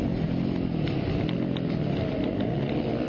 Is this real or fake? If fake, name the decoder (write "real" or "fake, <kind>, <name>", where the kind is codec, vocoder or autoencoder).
real